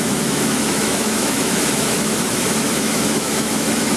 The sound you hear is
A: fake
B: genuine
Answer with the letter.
A